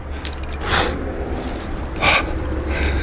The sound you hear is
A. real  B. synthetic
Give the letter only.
A